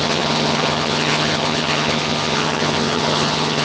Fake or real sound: fake